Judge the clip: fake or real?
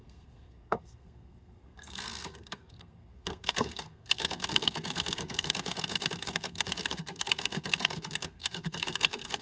fake